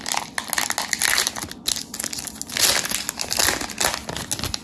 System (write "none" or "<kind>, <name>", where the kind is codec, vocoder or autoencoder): none